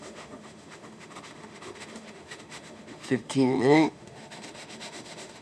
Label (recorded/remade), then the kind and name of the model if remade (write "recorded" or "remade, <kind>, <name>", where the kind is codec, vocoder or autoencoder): remade, autoencoder, DAC-VAE